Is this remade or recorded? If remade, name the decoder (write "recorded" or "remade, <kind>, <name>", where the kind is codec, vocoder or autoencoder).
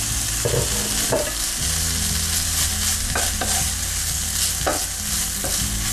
recorded